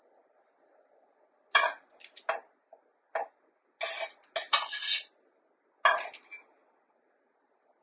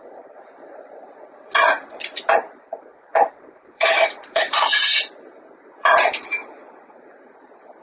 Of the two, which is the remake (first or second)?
second